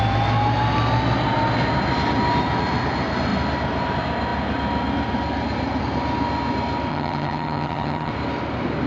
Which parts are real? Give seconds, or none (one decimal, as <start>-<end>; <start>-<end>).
0.0-6.9; 8.1-8.9